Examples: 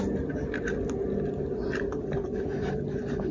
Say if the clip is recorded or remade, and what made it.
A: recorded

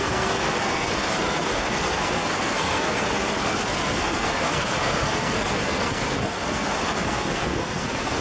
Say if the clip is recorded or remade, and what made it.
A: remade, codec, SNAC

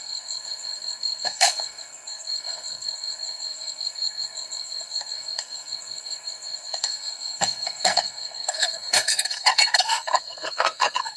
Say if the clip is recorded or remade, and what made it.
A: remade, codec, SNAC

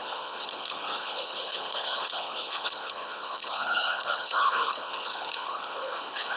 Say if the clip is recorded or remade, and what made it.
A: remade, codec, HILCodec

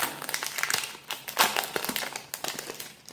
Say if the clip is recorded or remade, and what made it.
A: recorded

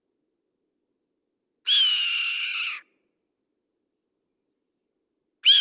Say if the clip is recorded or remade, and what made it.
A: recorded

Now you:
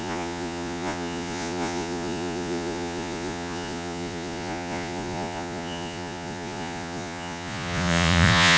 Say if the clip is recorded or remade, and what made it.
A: remade, vocoder, Vocos